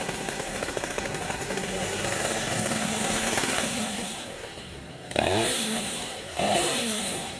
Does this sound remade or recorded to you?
remade